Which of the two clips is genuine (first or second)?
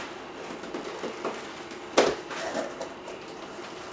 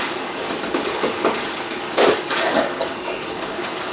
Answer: first